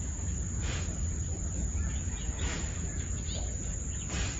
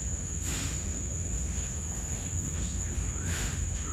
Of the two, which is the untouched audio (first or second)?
first